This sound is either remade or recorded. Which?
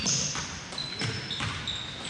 recorded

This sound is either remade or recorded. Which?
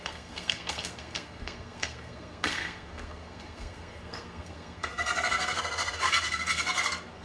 remade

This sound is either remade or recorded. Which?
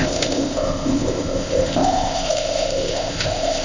remade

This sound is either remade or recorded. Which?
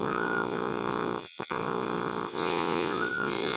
remade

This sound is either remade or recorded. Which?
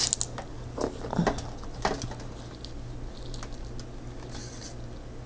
recorded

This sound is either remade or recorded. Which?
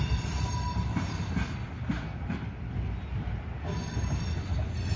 recorded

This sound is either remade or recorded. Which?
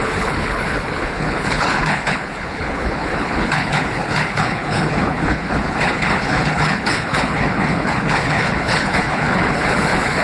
remade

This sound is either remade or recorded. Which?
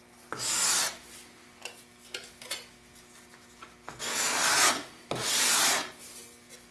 recorded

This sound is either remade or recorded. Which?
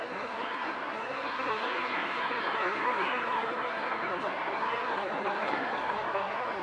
remade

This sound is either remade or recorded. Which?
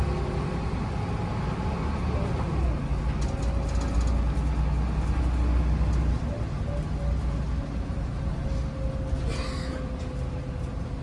recorded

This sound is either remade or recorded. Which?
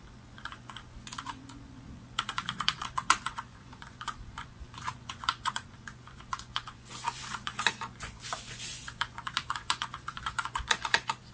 remade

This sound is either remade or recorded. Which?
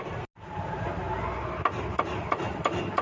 recorded